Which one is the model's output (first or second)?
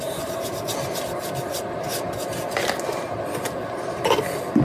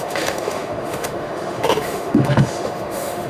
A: second